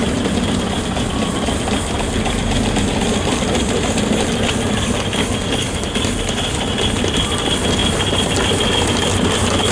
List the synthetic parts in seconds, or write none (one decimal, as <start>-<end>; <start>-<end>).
none